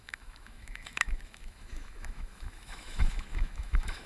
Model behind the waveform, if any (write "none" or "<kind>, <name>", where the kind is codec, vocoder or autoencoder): autoencoder, DAC-VAE